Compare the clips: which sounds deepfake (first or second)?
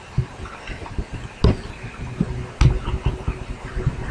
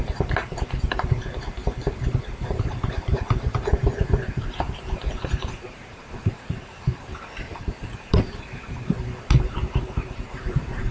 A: second